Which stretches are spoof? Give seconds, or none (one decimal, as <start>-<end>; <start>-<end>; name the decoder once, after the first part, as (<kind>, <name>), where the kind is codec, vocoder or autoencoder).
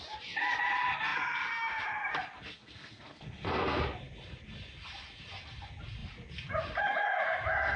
2.5-3.8 (codec, SNAC)